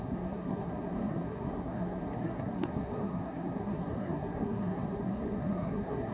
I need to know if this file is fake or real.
fake